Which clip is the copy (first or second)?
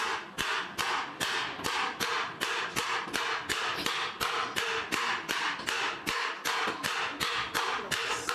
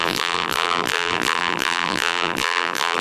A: second